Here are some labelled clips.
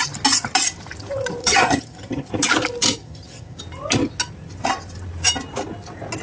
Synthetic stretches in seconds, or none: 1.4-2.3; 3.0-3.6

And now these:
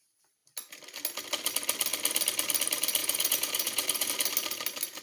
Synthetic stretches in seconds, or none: 3.0-4.1

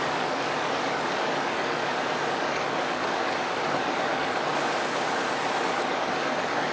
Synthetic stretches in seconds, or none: 0.0-1.8; 2.3-4.5; 5.6-6.7

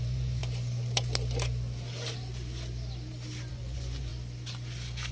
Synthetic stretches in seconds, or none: 0.0-0.4; 3.5-4.1

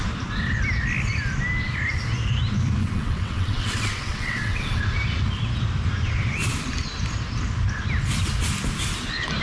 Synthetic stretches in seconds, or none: 2.8-4.8

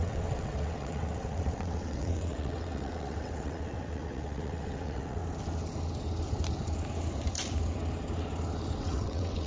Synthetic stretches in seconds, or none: 0.0-5.2; 8.8-9.5

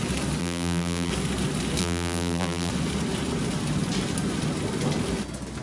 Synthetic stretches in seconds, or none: 0.4-1.1; 1.8-2.7